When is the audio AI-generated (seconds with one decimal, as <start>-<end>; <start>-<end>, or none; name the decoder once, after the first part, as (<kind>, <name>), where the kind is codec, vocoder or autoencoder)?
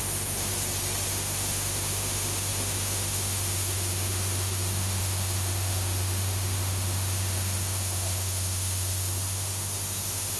0.0-0.5 (autoencoder, DAC-VAE); 1.1-10.4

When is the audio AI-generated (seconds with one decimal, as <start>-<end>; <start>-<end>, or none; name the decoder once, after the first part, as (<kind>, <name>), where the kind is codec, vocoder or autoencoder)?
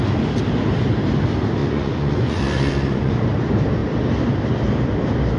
1.6-3.1 (vocoder, Vocos)